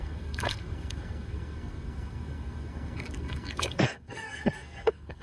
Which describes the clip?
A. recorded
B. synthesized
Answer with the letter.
B